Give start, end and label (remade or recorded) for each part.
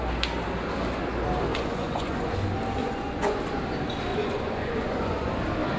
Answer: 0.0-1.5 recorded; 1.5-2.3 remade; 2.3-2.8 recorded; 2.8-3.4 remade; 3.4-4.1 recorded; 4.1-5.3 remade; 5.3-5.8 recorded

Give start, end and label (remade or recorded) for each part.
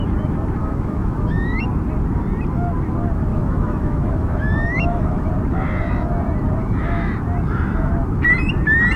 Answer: 0.0-0.6 recorded; 0.6-1.6 remade; 1.6-3.3 recorded; 3.3-5.3 remade; 5.3-6.6 recorded; 6.6-7.1 remade; 7.1-9.0 recorded